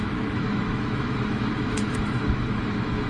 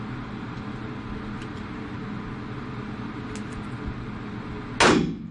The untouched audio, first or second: second